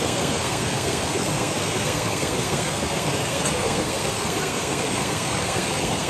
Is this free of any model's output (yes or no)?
no